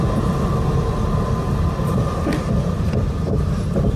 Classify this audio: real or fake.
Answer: real